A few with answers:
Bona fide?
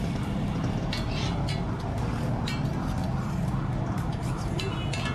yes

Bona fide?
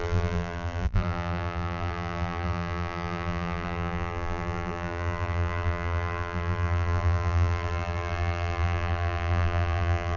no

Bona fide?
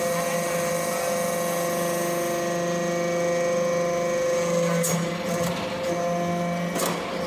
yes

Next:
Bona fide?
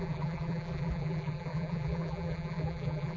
no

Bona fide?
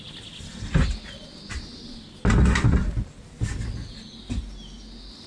yes